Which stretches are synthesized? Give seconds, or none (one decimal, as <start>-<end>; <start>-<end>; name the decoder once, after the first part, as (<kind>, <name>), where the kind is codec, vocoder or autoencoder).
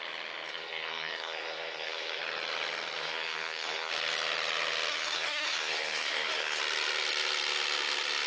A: 0.5-2.2 (codec, SNAC); 3.0-3.9; 4.9-6.6